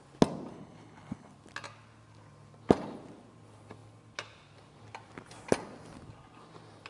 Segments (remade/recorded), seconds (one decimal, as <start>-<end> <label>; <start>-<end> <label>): 0.0-0.5 recorded; 0.5-1.3 remade; 1.3-6.9 recorded